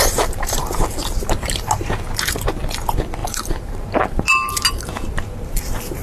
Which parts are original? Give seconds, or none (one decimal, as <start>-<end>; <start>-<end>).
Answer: 2.6-3.2; 4.7-6.0